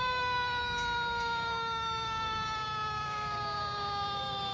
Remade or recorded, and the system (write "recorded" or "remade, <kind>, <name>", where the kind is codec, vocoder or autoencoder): remade, codec, DAC